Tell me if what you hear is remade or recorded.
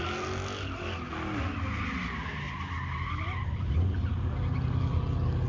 recorded